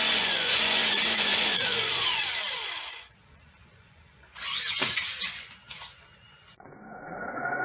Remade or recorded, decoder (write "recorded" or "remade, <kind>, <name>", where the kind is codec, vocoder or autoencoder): remade, vocoder, Vocos